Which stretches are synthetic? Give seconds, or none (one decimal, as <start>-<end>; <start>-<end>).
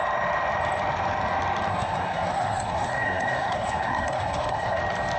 1.7-4.8